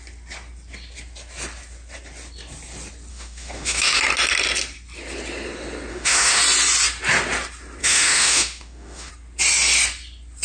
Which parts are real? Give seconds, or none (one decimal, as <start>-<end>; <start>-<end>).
0.0-3.1; 4.0-5.9; 6.4-7.8; 9.1-10.4